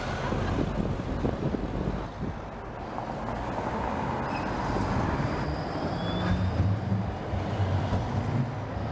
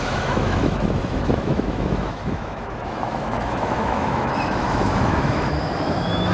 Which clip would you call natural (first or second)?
first